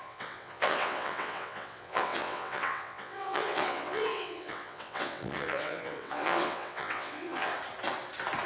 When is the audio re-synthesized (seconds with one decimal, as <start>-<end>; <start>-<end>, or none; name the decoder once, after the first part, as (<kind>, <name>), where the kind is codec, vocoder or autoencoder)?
0.0-7.5 (vocoder, WaveNeXt)